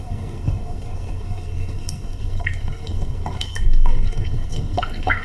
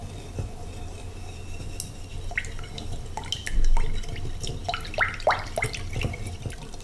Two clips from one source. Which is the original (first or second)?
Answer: second